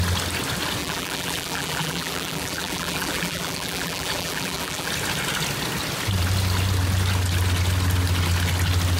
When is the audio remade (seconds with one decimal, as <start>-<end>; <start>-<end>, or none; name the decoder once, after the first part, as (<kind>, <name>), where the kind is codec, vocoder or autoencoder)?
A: 0.8-4.9 (vocoder, BigVGAN v2)